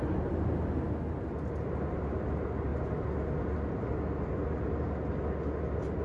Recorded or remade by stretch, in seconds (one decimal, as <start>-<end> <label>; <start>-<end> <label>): 0.0-6.0 recorded